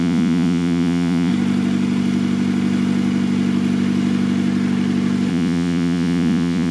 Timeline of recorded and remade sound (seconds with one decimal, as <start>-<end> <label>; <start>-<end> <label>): 0.0-1.3 remade; 1.3-5.3 recorded; 5.3-6.7 remade